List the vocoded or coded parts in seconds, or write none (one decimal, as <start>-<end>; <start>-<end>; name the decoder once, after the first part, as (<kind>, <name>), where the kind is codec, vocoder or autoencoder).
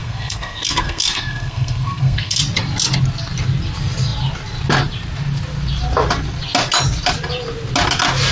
0.0-2.4 (codec, SNAC)